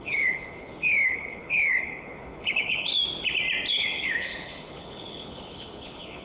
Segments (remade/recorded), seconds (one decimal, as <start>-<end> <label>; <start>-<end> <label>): 0.0-2.9 remade; 2.9-3.7 recorded; 3.7-6.2 remade